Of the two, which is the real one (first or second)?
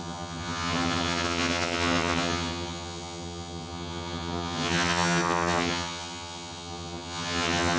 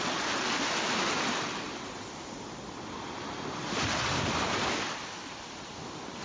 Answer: second